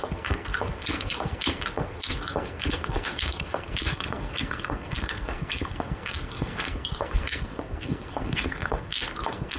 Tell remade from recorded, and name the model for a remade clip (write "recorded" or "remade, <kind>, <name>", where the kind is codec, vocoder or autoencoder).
remade, codec, SNAC